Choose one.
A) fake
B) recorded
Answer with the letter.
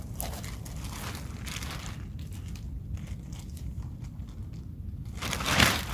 B